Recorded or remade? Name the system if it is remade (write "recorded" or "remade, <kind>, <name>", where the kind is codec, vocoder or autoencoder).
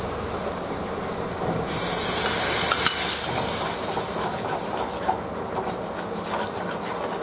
recorded